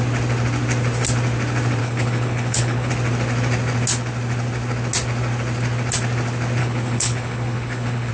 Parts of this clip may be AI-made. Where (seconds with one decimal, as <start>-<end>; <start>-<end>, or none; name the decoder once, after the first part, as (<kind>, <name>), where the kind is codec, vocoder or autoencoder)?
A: 1.8-2.9 (codec, HILCodec); 6.6-8.1